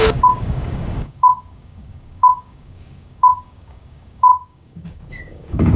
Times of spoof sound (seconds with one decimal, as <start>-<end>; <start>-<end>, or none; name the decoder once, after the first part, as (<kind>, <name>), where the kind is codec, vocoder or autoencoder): 0.0-5.8 (codec, DAC)